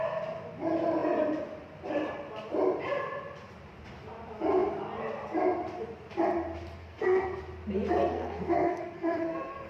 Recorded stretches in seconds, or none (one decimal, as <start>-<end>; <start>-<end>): 0.0-6.8; 7.4-8.0